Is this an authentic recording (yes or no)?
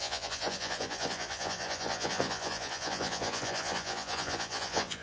no